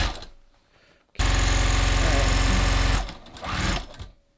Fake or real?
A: real